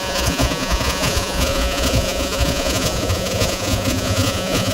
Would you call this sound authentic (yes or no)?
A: no